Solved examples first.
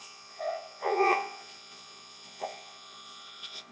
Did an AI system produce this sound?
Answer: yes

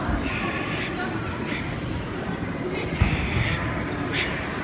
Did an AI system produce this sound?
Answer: no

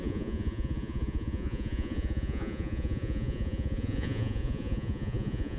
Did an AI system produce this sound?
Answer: yes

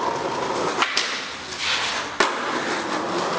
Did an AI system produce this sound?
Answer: no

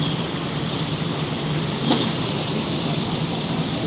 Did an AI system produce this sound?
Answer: no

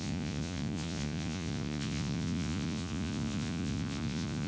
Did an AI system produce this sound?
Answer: yes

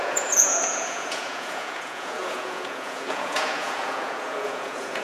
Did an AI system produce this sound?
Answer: yes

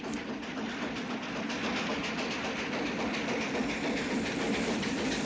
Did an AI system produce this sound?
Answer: no